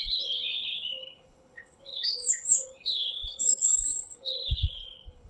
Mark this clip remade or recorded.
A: remade